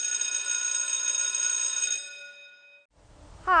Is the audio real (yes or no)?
yes